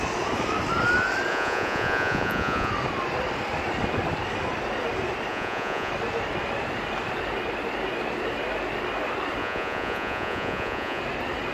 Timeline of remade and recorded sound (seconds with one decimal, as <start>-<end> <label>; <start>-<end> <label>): 0.0-1.3 recorded; 1.3-2.7 remade; 2.7-5.3 recorded; 5.3-5.9 remade; 5.9-9.4 recorded; 9.4-11.0 remade; 11.0-11.5 recorded